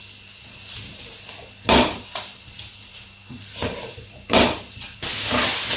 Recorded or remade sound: recorded